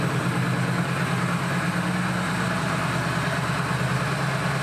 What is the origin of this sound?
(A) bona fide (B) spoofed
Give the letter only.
A